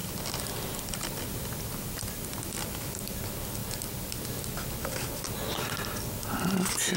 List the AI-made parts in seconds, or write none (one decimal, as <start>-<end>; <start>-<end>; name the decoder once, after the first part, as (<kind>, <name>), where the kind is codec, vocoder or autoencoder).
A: 0.0-3.2 (vocoder, BigVGAN v2)